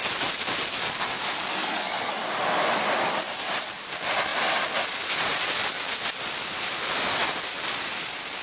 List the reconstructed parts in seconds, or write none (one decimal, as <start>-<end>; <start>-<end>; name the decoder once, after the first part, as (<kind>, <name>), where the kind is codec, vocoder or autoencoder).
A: 1.5-2.1 (codec, SNAC)